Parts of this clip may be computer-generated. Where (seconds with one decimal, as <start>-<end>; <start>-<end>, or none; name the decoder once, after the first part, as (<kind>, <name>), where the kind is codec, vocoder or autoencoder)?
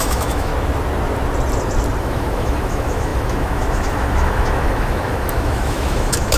0.0-0.5 (autoencoder, DAC-VAE); 2.0-6.4